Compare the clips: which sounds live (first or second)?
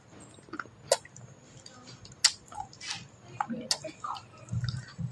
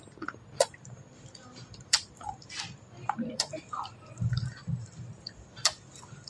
first